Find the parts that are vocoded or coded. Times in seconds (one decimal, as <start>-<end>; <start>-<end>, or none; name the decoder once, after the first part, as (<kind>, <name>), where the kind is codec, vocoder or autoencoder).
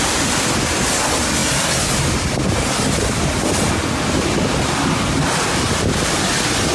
none